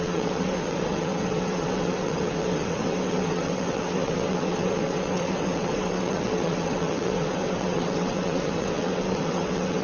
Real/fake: fake